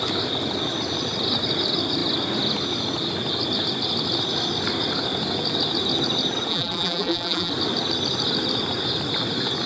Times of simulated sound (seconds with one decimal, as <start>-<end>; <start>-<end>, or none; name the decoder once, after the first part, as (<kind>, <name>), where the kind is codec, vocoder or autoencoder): 6.5-7.5 (vocoder, BigVGAN v2)